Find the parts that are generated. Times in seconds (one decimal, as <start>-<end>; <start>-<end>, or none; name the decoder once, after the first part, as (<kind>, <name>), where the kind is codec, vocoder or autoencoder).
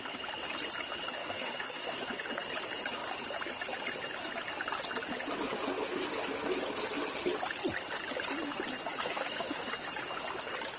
1.2-2.3 (autoencoder, DAC-VAE); 8.9-9.7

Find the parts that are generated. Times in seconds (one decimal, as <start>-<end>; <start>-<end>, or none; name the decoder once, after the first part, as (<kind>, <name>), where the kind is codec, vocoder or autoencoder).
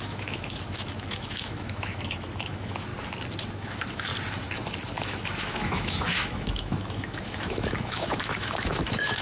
0.0-2.9 (autoencoder, DAC-VAE); 3.5-4.1; 5.0-9.2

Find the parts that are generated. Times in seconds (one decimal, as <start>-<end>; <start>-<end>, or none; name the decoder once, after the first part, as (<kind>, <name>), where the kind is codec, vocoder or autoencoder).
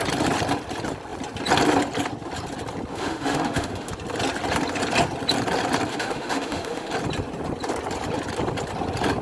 2.9-3.9 (autoencoder, DAC-VAE); 5.9-6.9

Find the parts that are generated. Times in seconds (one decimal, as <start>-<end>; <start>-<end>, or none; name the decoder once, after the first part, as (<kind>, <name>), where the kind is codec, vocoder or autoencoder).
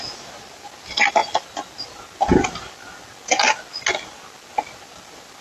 none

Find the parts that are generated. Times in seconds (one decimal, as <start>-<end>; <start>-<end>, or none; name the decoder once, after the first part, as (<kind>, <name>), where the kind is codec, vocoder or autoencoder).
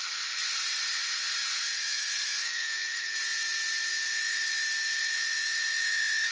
1.9-3.2 (autoencoder, DAC-VAE); 3.9-6.3